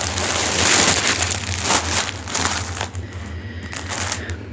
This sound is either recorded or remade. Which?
recorded